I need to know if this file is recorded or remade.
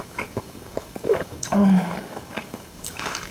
remade